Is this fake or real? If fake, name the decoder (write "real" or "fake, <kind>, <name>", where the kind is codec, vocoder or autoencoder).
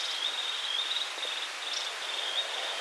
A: real